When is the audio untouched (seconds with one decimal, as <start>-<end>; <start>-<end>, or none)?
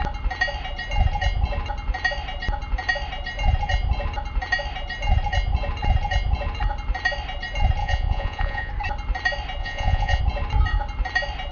0.0-7.8; 8.7-9.6; 10.2-11.5